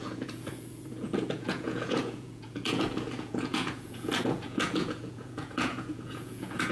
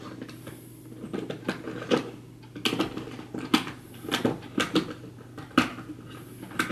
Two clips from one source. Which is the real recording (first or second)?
second